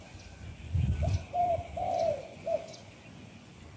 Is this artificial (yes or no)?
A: yes